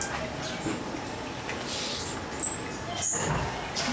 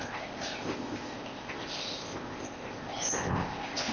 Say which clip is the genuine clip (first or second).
first